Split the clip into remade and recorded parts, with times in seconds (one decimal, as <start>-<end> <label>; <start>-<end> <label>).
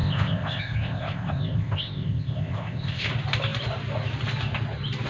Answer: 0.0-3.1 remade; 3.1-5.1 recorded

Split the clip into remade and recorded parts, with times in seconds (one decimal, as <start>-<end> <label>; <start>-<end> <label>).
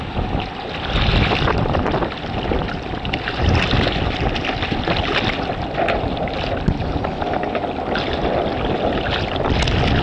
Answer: 0.0-10.0 recorded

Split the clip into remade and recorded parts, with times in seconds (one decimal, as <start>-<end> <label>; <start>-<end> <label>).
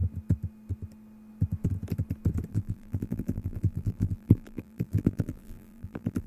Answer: 0.0-2.5 recorded; 2.5-6.3 remade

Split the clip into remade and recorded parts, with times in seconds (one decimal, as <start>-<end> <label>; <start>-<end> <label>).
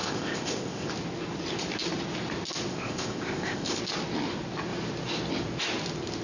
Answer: 0.0-0.9 remade; 0.9-2.7 recorded; 2.7-3.8 remade; 3.8-6.2 recorded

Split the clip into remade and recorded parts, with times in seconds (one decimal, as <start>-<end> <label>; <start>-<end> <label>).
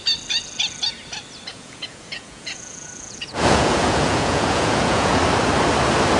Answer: 0.0-1.5 recorded; 1.5-5.2 remade; 5.2-6.2 recorded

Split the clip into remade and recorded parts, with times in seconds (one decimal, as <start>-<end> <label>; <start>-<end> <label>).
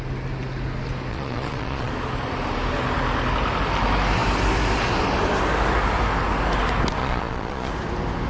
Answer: 0.0-1.1 recorded; 1.1-1.9 remade; 1.9-7.0 recorded; 7.0-7.7 remade; 7.7-8.3 recorded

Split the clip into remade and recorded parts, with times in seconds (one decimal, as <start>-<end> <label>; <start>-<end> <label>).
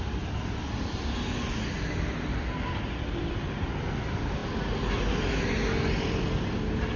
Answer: 0.0-7.0 recorded